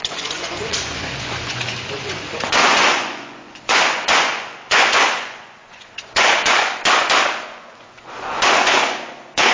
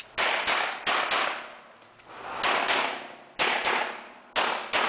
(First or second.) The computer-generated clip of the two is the first